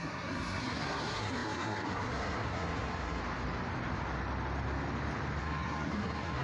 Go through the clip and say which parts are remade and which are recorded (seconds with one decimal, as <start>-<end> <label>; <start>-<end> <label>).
0.0-3.2 remade; 3.2-5.4 recorded; 5.4-6.4 remade